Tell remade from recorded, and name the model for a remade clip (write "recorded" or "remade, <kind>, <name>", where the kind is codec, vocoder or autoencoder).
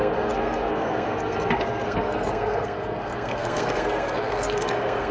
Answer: remade, codec, SNAC